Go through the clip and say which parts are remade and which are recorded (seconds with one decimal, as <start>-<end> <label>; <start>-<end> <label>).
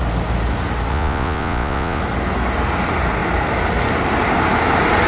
0.0-0.9 recorded; 0.9-2.0 remade; 2.0-5.1 recorded